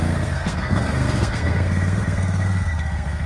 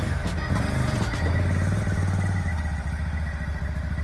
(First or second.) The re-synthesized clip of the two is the first